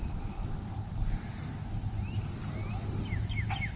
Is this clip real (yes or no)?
yes